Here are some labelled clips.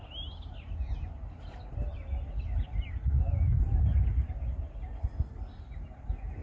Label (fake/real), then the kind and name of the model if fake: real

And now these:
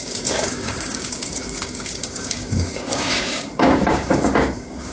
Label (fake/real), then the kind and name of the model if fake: fake, codec, DAC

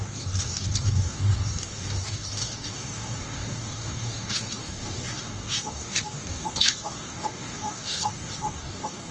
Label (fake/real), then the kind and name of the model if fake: fake, codec, DAC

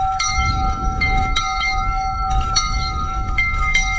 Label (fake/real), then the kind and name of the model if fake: fake, codec, DAC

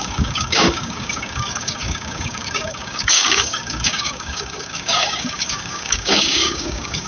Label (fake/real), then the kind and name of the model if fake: fake, codec, DAC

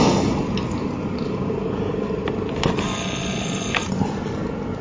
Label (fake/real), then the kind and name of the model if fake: real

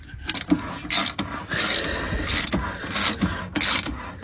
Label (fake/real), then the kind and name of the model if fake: real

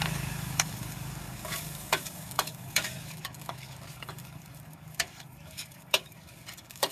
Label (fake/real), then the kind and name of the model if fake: fake, codec, DAC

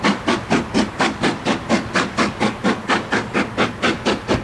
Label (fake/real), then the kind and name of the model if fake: real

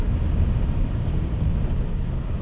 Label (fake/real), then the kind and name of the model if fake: real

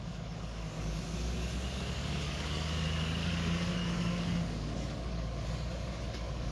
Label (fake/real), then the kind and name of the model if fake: fake, codec, DAC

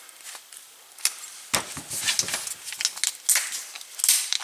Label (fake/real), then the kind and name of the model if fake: real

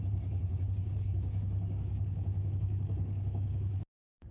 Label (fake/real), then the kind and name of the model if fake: fake, codec, DAC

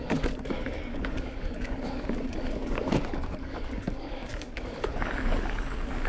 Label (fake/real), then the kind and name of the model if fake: fake, codec, DAC